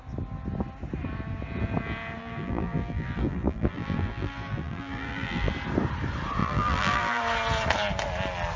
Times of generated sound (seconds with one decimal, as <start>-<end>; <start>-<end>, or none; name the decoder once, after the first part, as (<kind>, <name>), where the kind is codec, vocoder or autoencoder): 2.2-5.5 (vocoder, BigVGAN v2); 6.4-7.2